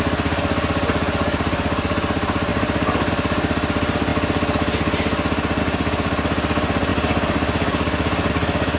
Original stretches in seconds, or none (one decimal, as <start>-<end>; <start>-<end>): 0.0-8.8

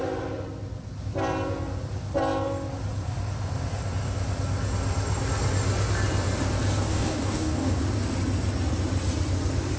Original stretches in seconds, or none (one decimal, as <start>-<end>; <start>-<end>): 0.0-6.9; 7.8-9.8

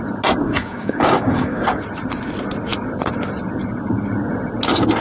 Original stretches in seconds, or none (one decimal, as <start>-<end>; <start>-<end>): 0.0-0.4; 1.8-5.0